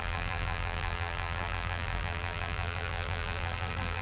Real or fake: fake